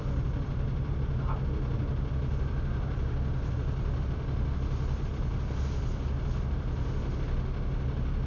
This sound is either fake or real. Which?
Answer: real